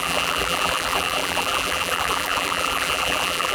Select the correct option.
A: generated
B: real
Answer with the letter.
A